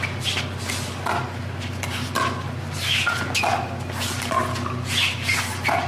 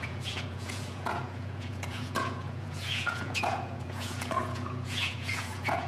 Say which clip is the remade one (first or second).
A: second